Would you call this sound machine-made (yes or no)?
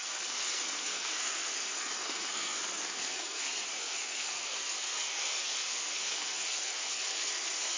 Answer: yes